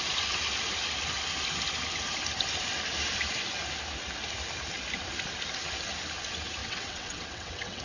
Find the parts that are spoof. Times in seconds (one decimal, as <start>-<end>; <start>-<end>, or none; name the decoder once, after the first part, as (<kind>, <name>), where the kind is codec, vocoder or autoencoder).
6.6-7.8 (vocoder, WaveNeXt)